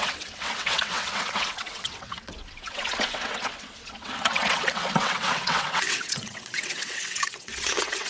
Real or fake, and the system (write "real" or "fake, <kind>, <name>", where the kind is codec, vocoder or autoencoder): fake, vocoder, WaveNeXt